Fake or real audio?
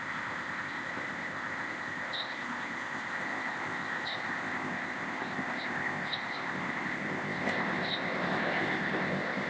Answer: fake